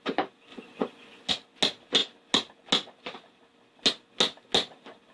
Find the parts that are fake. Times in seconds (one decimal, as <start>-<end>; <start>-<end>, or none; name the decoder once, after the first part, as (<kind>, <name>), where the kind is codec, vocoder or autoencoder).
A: 0.5-1.3 (vocoder, Vocos)